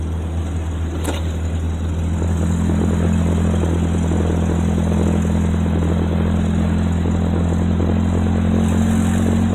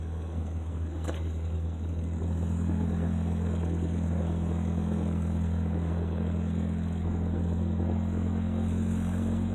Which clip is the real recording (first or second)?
first